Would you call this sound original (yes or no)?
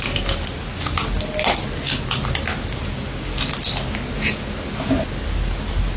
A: yes